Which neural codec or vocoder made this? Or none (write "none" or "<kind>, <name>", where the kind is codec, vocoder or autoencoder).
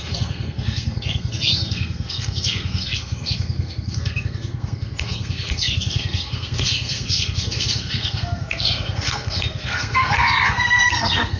codec, SNAC